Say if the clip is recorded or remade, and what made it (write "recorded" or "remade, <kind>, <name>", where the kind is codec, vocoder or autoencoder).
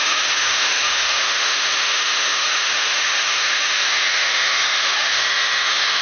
remade, autoencoder, DAC-VAE